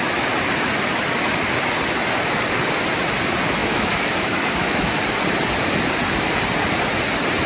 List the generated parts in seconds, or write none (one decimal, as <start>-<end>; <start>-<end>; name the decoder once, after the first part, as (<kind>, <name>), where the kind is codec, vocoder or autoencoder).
3.6-4.9 (autoencoder, DAC-VAE)